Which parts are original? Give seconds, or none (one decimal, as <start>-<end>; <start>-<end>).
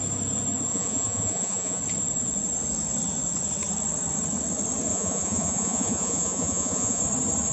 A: 0.0-0.7; 1.8-4.9; 7.0-7.5